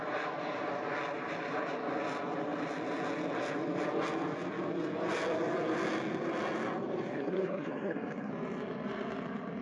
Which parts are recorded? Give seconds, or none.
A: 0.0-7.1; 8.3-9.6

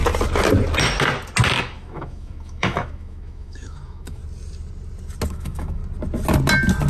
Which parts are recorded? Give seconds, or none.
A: 0.0-1.6; 4.2-5.3; 5.8-6.9

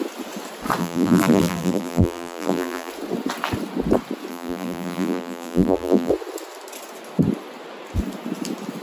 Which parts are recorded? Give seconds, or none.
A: 0.0-0.8; 2.9-4.3; 6.1-8.8